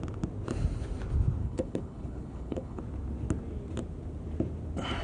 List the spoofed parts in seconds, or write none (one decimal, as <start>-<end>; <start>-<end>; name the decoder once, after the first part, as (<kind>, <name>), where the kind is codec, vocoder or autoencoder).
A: 1.4-2.8 (codec, HILCodec)

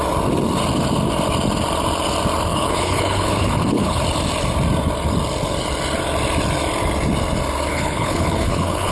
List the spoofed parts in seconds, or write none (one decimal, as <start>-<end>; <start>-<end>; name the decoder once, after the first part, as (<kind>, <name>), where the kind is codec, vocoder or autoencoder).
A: 2.5-4.0 (codec, HILCodec); 7.7-8.9